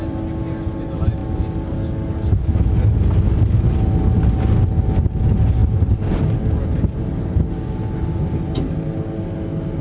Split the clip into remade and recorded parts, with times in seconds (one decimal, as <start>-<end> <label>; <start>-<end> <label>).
0.0-9.8 recorded